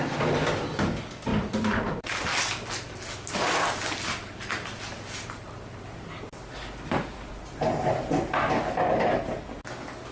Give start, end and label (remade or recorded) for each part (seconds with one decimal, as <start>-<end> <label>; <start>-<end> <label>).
0.0-10.1 recorded